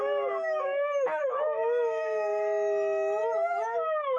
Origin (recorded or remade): remade